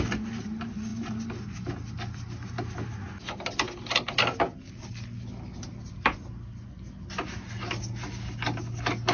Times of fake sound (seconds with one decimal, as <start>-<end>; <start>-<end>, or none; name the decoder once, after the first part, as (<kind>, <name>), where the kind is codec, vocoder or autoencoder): none